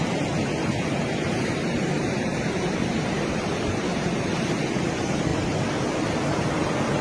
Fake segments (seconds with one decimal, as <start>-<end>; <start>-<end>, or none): 0.0-5.3; 6.0-7.0